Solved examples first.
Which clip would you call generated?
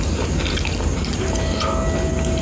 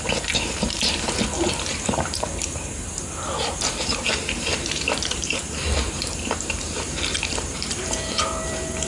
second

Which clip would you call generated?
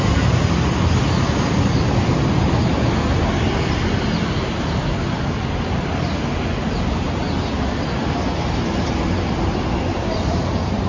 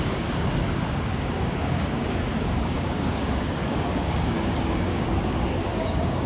second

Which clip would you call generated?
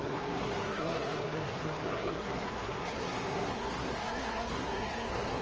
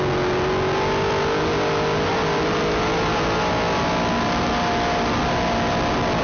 first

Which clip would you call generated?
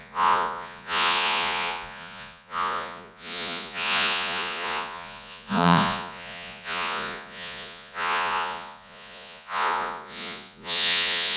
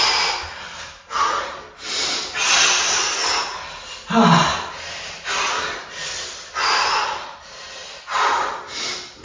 first